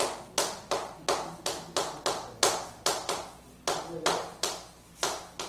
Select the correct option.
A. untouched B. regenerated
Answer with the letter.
A